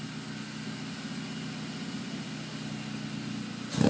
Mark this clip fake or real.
real